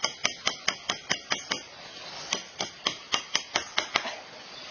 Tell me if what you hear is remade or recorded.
recorded